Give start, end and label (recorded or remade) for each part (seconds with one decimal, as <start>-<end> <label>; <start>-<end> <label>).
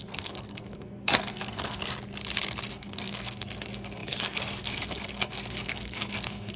0.0-1.8 remade; 1.8-2.7 recorded; 2.7-6.6 remade